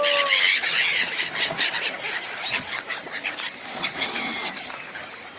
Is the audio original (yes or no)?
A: yes